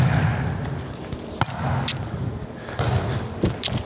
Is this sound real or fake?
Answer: real